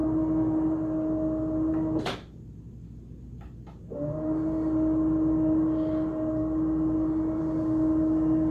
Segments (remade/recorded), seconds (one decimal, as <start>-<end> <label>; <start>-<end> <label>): 0.0-8.5 recorded